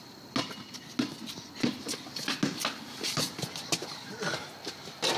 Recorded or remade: recorded